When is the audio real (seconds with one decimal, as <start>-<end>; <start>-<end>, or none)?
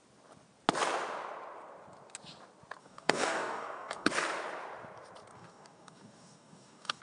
0.0-2.8; 4.1-5.3